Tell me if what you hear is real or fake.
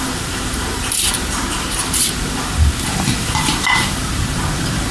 fake